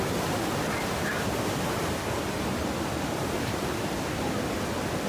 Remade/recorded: recorded